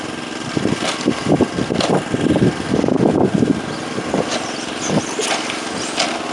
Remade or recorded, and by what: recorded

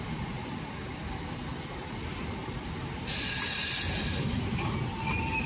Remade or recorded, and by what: recorded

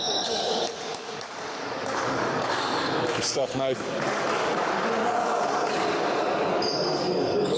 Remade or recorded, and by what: remade, codec, DAC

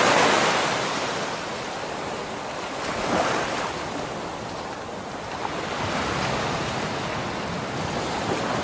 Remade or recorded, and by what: recorded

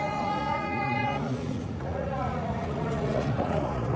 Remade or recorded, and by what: remade, vocoder, Vocos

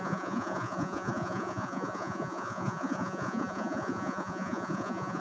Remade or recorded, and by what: remade, vocoder, Vocos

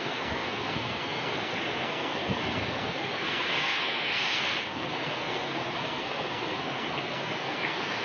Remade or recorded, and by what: remade, codec, SNAC